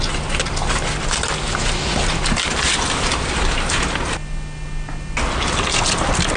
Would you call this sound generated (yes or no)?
no